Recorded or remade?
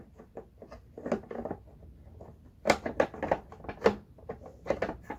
recorded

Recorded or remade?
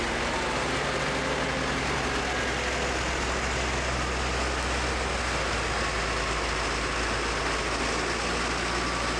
recorded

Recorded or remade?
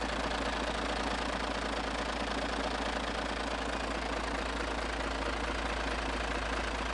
recorded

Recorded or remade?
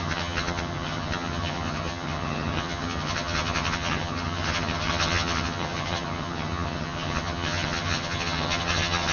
remade